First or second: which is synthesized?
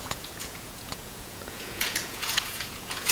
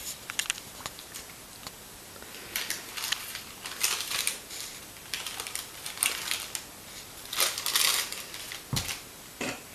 first